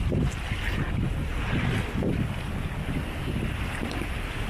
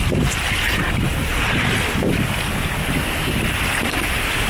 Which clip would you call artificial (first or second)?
second